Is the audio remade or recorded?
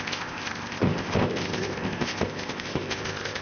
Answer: remade